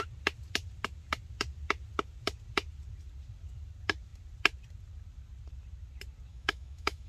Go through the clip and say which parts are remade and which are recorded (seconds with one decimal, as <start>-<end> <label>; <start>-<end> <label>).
0.0-6.3 recorded; 6.3-7.1 remade